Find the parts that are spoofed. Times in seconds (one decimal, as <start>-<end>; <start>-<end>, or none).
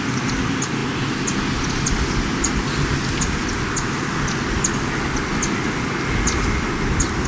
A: none